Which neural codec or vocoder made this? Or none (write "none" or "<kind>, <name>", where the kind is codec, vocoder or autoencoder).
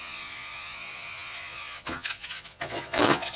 vocoder, Vocos